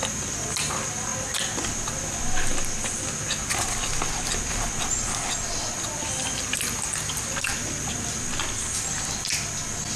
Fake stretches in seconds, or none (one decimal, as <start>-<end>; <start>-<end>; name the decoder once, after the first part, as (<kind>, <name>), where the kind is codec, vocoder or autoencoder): none